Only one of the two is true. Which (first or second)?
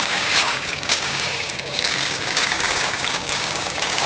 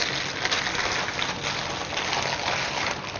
second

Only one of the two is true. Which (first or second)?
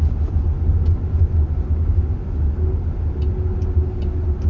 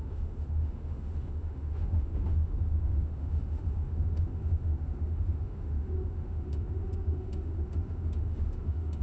first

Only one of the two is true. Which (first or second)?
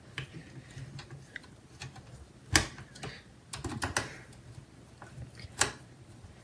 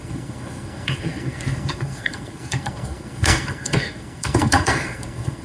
first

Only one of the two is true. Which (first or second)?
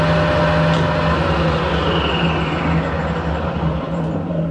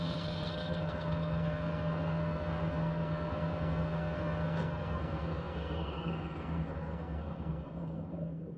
first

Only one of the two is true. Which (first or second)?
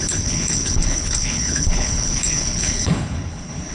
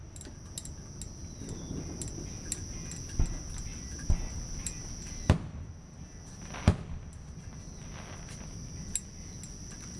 second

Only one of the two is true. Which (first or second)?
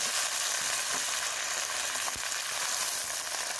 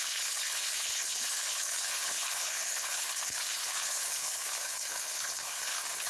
first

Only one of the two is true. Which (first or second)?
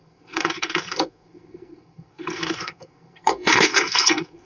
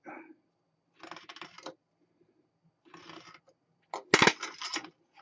second